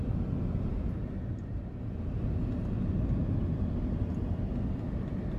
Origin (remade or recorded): recorded